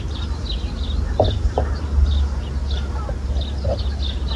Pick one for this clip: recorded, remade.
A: recorded